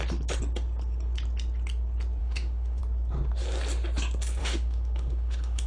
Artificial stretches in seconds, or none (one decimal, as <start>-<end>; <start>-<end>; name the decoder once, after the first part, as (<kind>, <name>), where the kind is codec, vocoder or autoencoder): 2.2-2.8 (autoencoder, DAC-VAE); 4.4-5.7